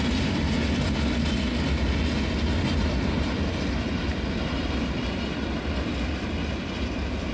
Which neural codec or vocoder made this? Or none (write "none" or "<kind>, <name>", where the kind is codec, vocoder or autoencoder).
none